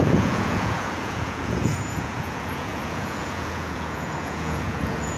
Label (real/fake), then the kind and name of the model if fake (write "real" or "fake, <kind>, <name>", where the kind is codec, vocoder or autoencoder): fake, vocoder, Vocos